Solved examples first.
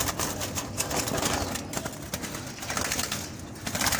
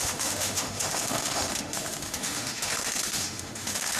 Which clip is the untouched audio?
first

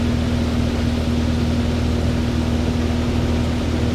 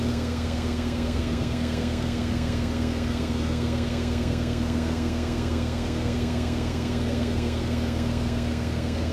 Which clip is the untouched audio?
first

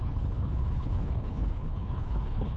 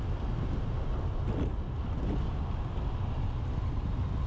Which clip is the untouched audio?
second